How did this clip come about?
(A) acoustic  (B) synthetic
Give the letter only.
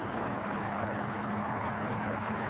B